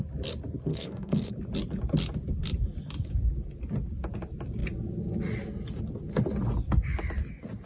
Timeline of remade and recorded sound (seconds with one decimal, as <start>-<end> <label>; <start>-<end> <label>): 0.0-0.7 recorded; 0.7-1.3 remade; 1.3-7.7 recorded